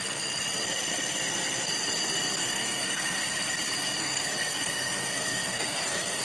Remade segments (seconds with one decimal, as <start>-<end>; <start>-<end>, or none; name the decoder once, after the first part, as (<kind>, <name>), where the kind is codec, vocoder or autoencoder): 2.4-3.2 (codec, SNAC); 4.0-6.2